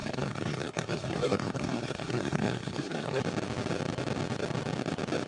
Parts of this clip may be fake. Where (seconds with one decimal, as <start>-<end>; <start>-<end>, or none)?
0.0-3.2